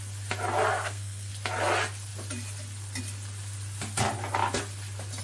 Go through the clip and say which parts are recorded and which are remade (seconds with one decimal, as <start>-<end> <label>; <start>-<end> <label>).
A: 0.0-0.7 recorded; 0.7-1.3 remade; 1.3-5.2 recorded